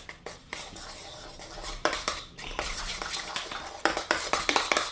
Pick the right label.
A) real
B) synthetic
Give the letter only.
B